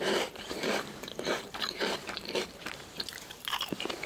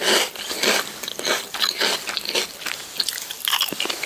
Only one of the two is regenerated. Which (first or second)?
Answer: first